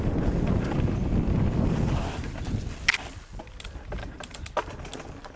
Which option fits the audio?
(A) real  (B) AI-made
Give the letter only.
A